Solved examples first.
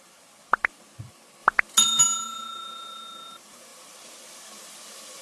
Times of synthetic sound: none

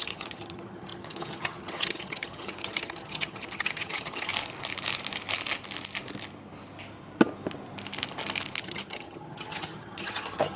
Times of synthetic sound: 0.0-4.3 (vocoder, HiFi-GAN); 8.6-10.6

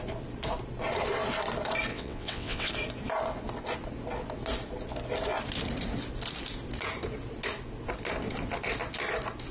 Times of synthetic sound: 1.9-2.7 (vocoder, WaveNeXt)

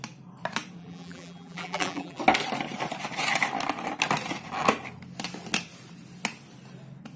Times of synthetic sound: 0.8-2.2 (vocoder, BigVGAN v2)

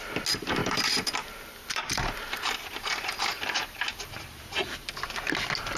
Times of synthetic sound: 0.6-4.1 (vocoder, BigVGAN v2)

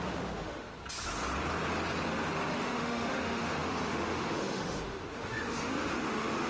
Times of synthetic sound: 0.0-0.7 (autoencoder, DAC-VAE); 2.5-6.5